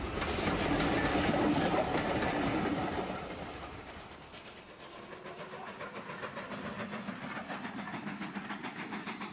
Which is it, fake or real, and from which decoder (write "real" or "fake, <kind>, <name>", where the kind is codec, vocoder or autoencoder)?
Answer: real